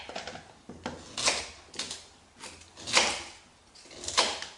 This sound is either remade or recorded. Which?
recorded